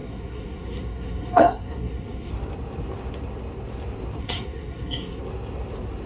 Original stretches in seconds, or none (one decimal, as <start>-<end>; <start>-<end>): 2.3-4.2; 5.2-6.1